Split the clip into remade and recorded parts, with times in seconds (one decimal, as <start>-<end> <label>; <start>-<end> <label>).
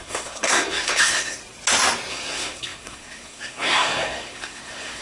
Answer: 0.0-1.4 remade; 1.4-2.1 recorded; 2.1-5.0 remade